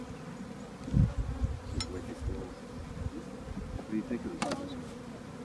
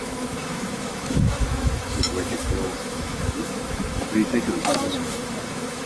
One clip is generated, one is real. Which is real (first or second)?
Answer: first